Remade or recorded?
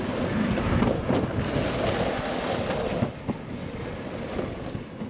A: recorded